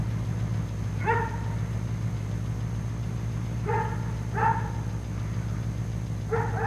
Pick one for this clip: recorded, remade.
recorded